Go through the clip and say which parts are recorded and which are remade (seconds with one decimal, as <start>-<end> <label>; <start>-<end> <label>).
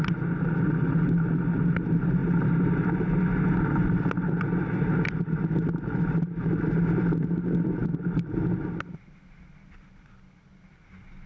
0.0-11.3 recorded